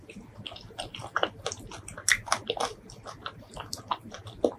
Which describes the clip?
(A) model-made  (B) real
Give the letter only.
B